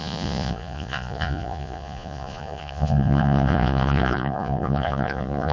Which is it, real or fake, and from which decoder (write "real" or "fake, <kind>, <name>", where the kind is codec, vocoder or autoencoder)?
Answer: fake, vocoder, Vocos